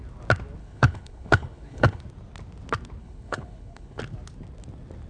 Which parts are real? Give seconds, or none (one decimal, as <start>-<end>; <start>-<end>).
0.0-0.6; 2.0-3.0; 4.0-5.1